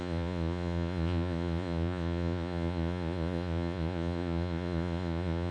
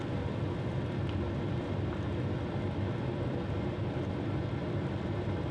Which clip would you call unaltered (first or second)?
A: second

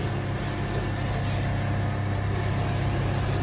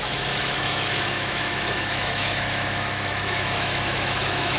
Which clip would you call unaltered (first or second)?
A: first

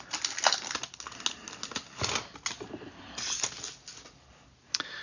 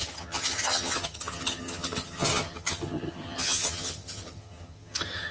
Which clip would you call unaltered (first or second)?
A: first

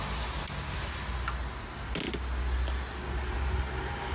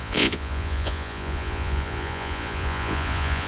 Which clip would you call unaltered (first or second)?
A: first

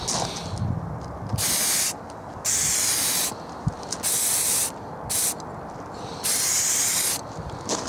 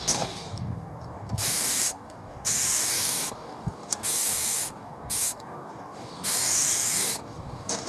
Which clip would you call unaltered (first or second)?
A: first